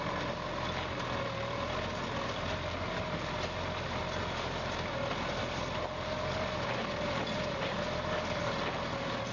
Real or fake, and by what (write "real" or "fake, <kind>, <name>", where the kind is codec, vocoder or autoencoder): real